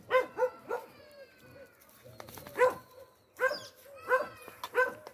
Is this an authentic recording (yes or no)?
yes